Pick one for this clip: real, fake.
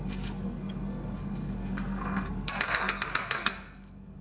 fake